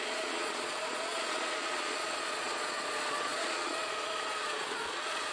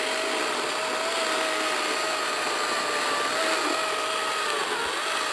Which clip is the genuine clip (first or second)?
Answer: second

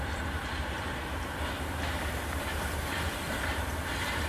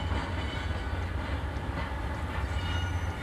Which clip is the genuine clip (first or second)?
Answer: second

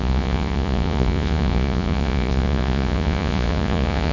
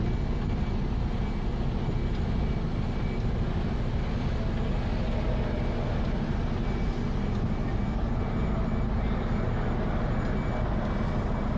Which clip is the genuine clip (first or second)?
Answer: second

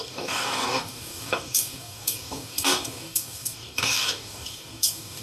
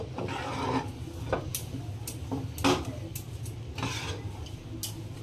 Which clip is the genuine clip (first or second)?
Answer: second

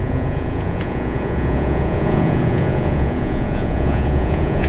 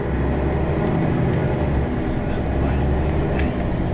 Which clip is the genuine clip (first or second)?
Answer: second